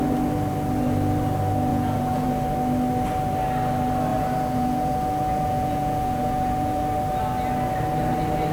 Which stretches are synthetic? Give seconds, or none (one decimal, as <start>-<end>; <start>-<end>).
1.7-2.3; 4.1-6.8